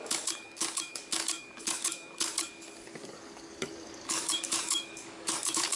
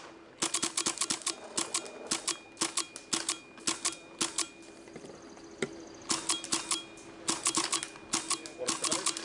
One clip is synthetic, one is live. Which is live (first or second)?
second